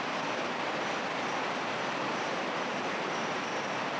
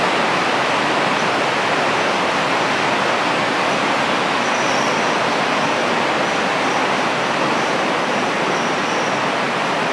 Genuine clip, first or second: second